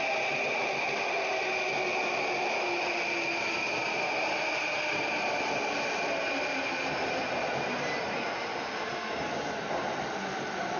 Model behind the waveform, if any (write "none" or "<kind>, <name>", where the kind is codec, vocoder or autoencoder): none